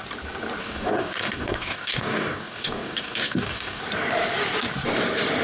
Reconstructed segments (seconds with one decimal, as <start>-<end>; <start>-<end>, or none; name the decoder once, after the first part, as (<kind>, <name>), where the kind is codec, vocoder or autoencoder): 0.6-3.8 (codec, DAC)

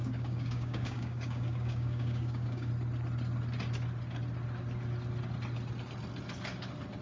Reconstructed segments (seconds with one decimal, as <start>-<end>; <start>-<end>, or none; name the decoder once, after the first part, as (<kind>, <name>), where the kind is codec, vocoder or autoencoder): 0.0-2.7 (codec, DAC)